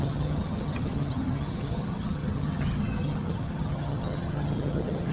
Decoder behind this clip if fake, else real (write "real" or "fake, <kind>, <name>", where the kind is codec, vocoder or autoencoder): fake, vocoder, HiFi-GAN